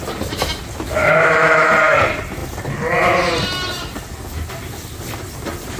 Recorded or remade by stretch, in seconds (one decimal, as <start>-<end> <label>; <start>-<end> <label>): 0.0-1.0 recorded; 1.0-1.7 remade; 1.7-5.8 recorded